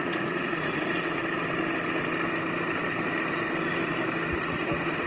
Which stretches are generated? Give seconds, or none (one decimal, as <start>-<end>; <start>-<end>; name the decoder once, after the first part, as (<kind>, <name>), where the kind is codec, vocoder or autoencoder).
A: 0.0-1.2 (vocoder, Vocos); 4.3-5.1